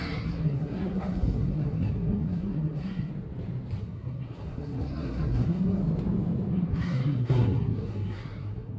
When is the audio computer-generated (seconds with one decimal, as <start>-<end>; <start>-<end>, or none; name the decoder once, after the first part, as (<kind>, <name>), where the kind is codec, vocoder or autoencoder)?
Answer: 0.0-3.1 (codec, SNAC); 3.8-5.8; 6.5-8.8